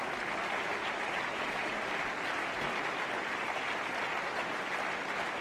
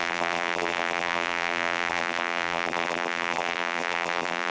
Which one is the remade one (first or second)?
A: second